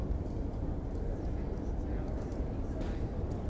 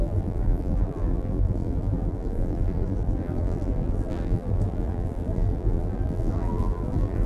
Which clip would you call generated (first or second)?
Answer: second